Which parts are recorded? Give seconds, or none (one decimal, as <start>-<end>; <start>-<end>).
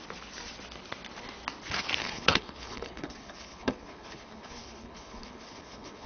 0.0-2.0